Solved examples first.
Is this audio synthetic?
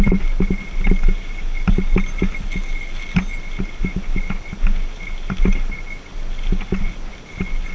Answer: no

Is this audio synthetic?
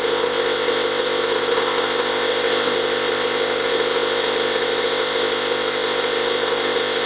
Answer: yes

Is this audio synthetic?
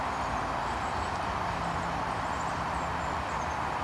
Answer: no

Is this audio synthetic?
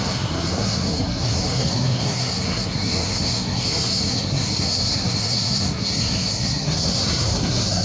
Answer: yes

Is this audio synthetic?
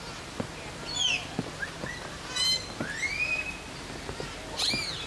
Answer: no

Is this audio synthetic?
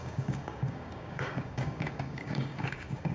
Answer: yes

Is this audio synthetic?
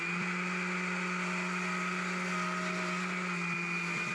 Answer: no